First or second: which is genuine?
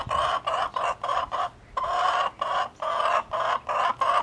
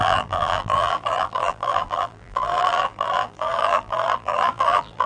first